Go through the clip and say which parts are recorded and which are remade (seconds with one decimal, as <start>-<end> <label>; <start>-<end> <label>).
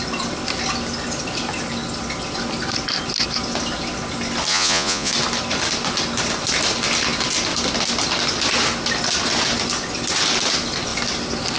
0.0-4.5 recorded; 4.5-5.1 remade; 5.1-11.6 recorded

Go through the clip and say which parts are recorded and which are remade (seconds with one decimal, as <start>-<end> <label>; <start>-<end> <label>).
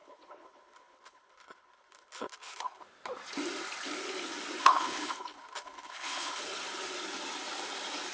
0.0-2.8 remade; 2.8-4.6 recorded; 4.6-6.4 remade; 6.4-8.1 recorded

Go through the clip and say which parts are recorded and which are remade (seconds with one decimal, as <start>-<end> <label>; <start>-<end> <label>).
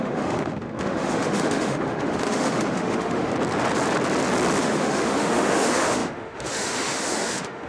0.0-3.3 remade; 3.3-4.6 recorded; 4.6-7.7 remade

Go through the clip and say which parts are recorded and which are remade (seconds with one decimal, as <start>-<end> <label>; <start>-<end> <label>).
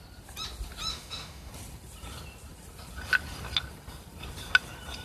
0.0-0.9 recorded; 0.9-1.5 remade; 1.5-5.0 recorded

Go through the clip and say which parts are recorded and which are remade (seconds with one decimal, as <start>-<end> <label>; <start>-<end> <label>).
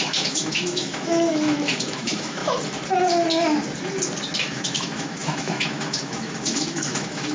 0.0-2.4 remade; 2.4-4.4 recorded; 4.4-7.3 remade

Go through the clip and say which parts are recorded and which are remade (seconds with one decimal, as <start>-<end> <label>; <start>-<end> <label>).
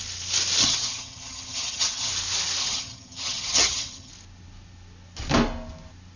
0.0-0.6 recorded; 0.6-2.1 remade; 2.1-2.6 recorded; 2.6-4.1 remade; 4.1-6.2 recorded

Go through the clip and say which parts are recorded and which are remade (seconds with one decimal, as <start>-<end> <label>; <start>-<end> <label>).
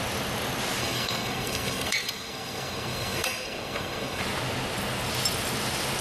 0.0-0.8 recorded; 0.8-4.2 remade; 4.2-6.0 recorded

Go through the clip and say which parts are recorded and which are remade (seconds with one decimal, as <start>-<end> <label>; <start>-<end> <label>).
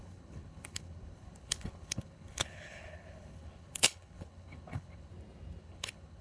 0.0-5.1 remade; 5.1-5.6 recorded; 5.6-6.2 remade